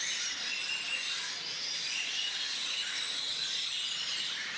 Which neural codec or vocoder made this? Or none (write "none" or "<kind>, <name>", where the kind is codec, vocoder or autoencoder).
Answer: none